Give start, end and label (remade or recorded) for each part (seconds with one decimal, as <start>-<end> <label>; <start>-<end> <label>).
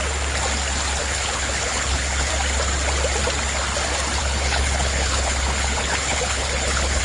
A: 0.0-1.0 recorded; 1.0-2.3 remade; 2.3-4.2 recorded; 4.2-7.0 remade